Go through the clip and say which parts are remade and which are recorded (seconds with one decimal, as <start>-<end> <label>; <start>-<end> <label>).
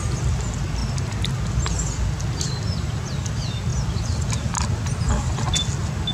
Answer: 0.0-3.7 recorded; 3.7-5.1 remade; 5.1-6.1 recorded